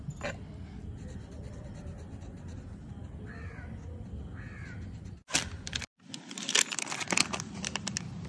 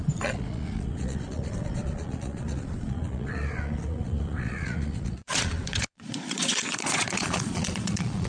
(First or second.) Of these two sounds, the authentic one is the first